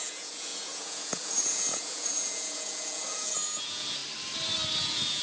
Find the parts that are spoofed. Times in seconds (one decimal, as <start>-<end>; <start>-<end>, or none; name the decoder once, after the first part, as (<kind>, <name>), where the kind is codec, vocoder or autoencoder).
0.0-4.0 (vocoder, Vocos); 4.8-5.2